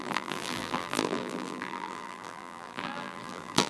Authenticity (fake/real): fake